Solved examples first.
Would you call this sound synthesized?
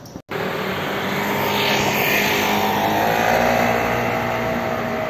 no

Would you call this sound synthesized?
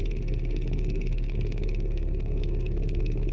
yes